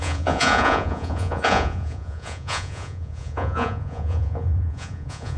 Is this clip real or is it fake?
fake